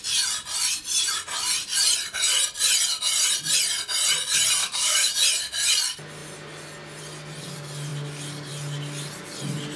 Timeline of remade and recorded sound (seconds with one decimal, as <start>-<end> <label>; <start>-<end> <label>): 0.0-4.6 recorded; 4.6-5.1 remade; 5.1-9.8 recorded